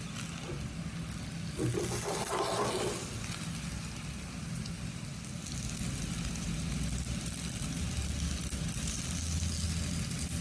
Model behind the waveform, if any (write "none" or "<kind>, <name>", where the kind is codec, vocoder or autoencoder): none